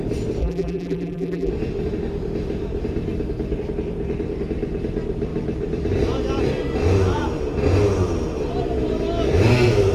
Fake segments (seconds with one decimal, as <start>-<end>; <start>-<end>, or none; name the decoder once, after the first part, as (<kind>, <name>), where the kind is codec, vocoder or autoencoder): 0.4-1.5 (vocoder, BigVGAN v2)